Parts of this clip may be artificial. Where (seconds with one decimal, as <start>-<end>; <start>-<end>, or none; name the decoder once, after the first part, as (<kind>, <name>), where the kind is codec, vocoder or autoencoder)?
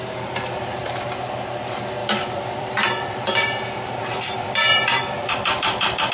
2.0-6.1 (vocoder, BigVGAN v2)